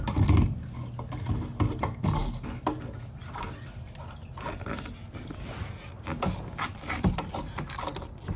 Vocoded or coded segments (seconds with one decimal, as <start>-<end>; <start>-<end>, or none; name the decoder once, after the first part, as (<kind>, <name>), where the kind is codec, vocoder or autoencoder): none